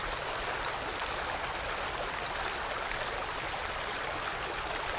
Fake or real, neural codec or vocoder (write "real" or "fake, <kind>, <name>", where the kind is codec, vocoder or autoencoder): real